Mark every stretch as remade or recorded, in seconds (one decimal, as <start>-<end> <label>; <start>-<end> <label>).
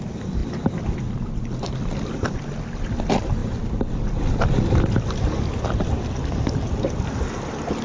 0.0-7.8 recorded